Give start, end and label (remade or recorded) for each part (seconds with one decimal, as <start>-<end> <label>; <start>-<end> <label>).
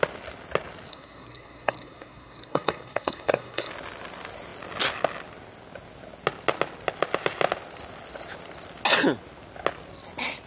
0.0-0.9 recorded; 0.9-3.7 remade; 3.7-10.5 recorded